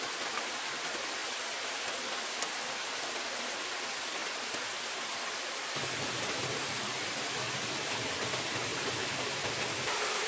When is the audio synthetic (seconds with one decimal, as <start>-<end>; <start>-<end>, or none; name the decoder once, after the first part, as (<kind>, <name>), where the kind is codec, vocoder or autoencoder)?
0.0-4.2 (vocoder, BigVGAN v2); 4.9-10.3